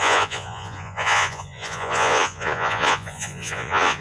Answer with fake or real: fake